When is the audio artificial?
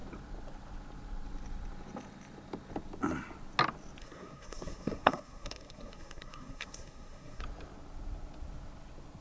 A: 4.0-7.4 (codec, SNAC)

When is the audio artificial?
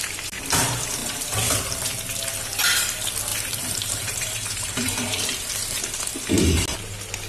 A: 3.3-5.8 (vocoder, BigVGAN v2)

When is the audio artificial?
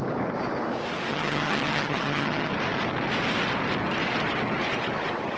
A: 1.1-2.5 (vocoder, HiFi-GAN)